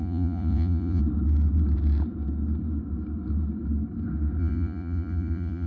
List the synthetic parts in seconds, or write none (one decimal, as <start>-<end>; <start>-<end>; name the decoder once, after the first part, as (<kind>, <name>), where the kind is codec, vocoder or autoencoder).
0.0-1.0 (vocoder, Vocos); 4.4-5.7